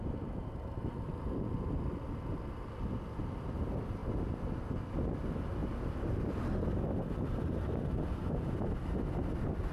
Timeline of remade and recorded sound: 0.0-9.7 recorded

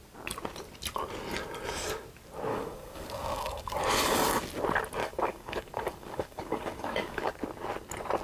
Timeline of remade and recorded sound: 0.0-2.5 recorded; 2.5-3.8 remade; 3.8-5.0 recorded; 5.0-7.3 remade; 7.3-8.2 recorded

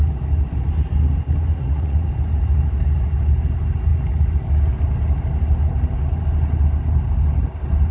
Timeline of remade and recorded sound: 0.0-1.5 recorded; 1.5-2.1 remade; 2.1-7.9 recorded

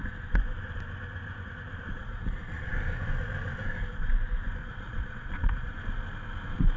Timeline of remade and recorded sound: 0.0-2.0 recorded; 2.0-2.7 remade; 2.7-4.6 recorded; 4.6-5.7 remade; 5.7-6.8 recorded

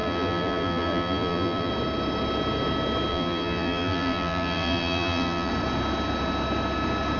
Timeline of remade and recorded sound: 0.0-1.7 remade; 1.7-3.1 recorded; 3.1-5.5 remade; 5.5-7.2 recorded

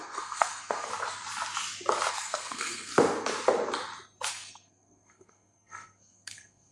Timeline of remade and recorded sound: 0.0-0.9 remade; 0.9-2.1 recorded; 2.1-2.9 remade; 2.9-4.3 recorded; 4.3-6.7 remade

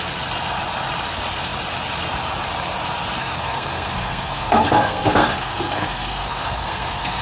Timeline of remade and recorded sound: 0.0-3.2 recorded; 3.2-7.2 remade